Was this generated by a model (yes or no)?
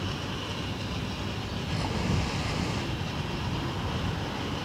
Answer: no